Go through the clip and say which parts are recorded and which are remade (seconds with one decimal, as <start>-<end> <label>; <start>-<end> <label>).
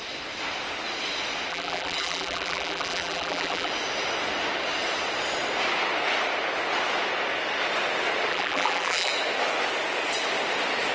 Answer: 0.0-1.5 recorded; 1.5-3.7 remade; 3.7-8.3 recorded; 8.3-9.1 remade; 9.1-10.9 recorded